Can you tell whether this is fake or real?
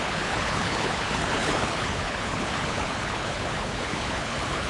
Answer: fake